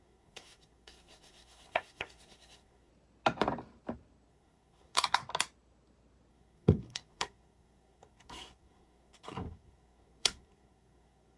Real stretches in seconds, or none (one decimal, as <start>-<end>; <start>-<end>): 2.9-4.3; 5.2-6.3